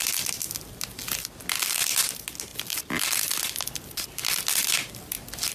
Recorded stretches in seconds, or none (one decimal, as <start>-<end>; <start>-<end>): 0.0-5.5